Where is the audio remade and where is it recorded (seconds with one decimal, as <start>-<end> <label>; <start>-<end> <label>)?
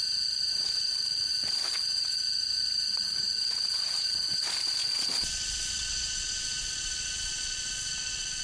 0.0-8.4 remade